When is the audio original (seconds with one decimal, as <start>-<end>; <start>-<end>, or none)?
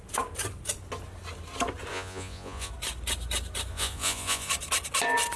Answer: 0.0-1.9; 2.7-3.7; 4.5-5.4